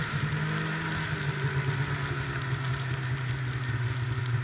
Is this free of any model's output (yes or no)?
yes